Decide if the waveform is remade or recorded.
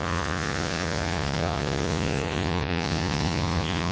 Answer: remade